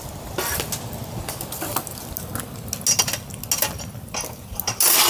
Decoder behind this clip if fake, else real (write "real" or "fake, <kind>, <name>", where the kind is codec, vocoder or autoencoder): real